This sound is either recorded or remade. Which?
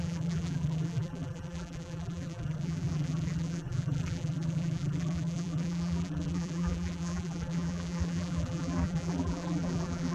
remade